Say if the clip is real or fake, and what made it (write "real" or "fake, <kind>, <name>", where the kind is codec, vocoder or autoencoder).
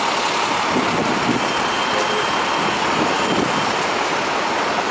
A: real